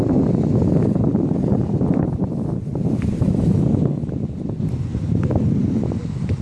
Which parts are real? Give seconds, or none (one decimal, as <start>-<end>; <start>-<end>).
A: 0.0-1.1; 2.2-4.9; 5.4-6.4